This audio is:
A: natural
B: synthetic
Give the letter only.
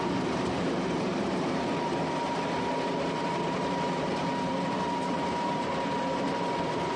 B